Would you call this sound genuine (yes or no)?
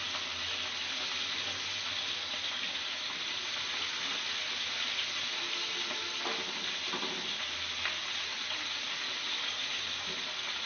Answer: yes